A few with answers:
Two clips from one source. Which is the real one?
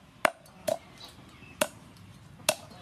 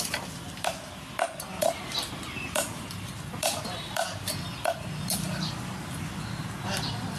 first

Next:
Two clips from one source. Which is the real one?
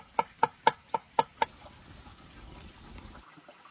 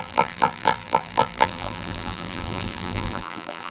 first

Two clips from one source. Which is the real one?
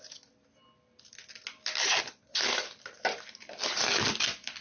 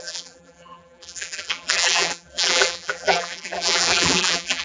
first